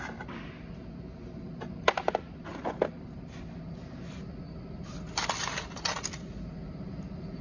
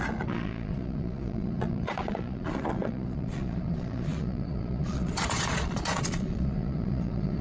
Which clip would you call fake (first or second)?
second